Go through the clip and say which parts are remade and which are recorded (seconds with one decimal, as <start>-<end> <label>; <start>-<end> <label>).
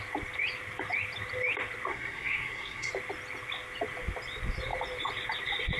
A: 0.0-1.9 recorded; 1.9-2.9 remade; 2.9-5.8 recorded